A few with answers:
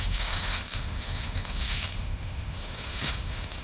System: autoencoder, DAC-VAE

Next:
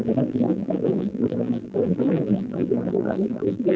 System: vocoder, BigVGAN v2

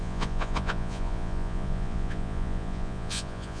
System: vocoder, Vocos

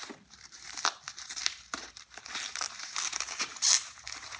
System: vocoder, BigVGAN v2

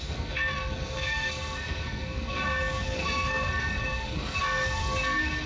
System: codec, SNAC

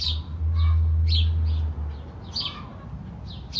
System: none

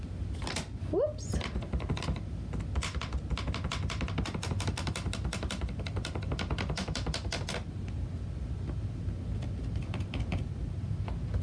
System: none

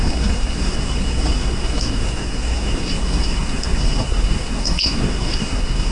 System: codec, SNAC